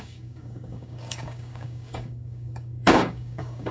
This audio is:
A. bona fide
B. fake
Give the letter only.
B